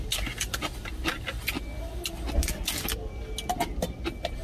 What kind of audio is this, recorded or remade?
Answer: recorded